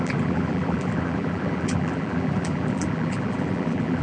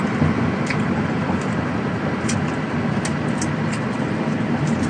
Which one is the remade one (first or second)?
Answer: first